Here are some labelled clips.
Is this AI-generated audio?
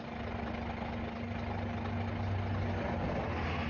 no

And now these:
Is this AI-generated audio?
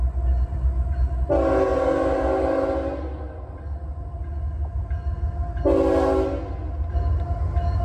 no